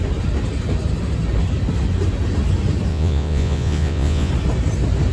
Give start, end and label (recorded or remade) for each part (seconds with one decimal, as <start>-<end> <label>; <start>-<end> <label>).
0.0-2.9 recorded; 2.9-4.3 remade; 4.3-5.1 recorded